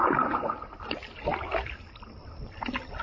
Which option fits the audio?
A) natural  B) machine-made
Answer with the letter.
A